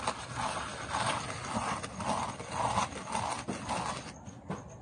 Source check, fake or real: real